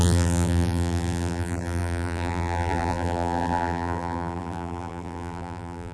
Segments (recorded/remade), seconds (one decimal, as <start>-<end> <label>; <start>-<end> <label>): 0.0-5.9 remade